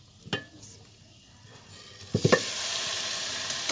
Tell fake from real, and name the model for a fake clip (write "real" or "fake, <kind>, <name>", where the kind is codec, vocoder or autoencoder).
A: real